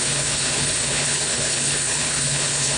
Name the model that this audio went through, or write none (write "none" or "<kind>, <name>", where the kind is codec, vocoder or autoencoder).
codec, HILCodec